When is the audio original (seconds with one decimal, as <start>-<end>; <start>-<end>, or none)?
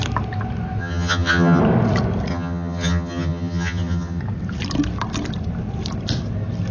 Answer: 0.0-0.8; 1.6-2.3; 4.2-6.7